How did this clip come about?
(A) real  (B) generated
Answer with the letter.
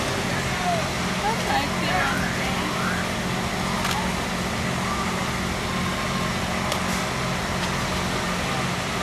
A